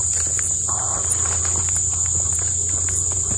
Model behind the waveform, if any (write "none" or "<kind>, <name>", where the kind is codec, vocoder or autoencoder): none